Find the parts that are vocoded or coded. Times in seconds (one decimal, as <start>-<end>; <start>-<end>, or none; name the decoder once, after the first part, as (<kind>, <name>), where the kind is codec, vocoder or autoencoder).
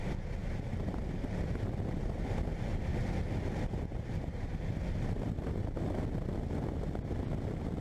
none